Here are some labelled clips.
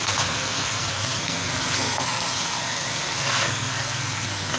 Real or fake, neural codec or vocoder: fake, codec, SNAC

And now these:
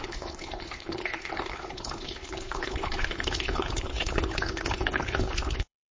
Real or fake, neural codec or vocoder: fake, codec, HILCodec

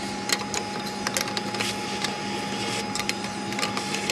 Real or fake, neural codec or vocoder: real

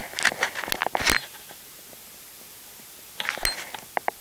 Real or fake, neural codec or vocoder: real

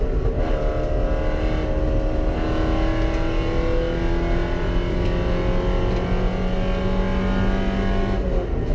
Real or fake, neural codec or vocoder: real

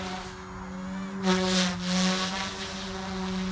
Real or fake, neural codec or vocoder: real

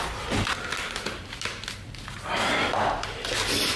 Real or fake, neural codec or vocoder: real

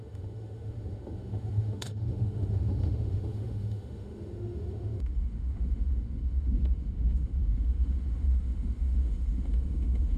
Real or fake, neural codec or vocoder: fake, autoencoder, DAC-VAE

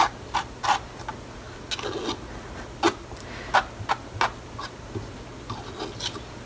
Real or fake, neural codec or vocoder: real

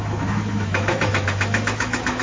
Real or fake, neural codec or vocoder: fake, autoencoder, DAC-VAE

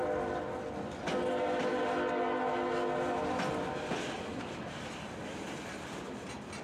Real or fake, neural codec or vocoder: real